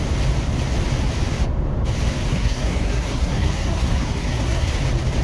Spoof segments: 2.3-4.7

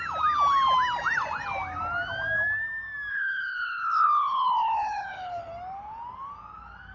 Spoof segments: 3.1-5.5

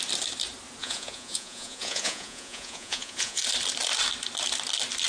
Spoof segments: 0.8-3.4

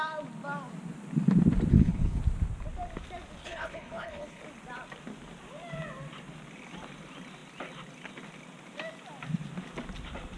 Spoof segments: 1.7-2.2; 3.4-4.4